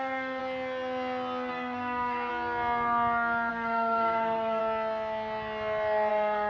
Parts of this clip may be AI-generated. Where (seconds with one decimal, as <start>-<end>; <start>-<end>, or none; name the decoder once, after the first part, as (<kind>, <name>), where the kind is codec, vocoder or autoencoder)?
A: 0.0-0.4 (codec, SNAC); 1.5-2.3; 3.5-4.6; 6.1-6.5